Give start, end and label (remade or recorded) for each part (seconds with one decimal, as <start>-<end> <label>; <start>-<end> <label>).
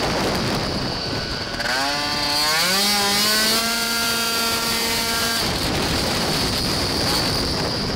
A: 0.0-0.6 recorded; 0.6-1.2 remade; 1.2-3.6 recorded; 3.6-7.0 remade; 7.0-8.0 recorded